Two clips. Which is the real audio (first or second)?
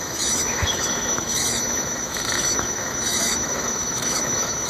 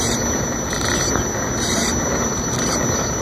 second